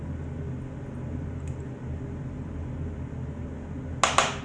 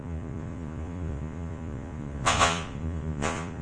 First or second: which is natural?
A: first